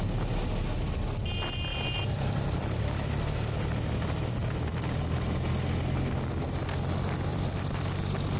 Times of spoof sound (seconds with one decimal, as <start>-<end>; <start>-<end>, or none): 1.7-3.1; 7.3-7.8